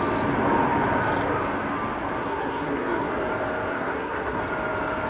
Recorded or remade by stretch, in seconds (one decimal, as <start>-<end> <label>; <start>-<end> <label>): 0.0-2.2 recorded; 2.2-3.1 remade; 3.1-3.7 recorded; 3.7-4.4 remade; 4.4-5.1 recorded